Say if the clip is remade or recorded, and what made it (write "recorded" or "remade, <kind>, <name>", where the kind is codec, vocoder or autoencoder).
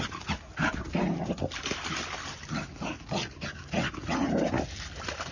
recorded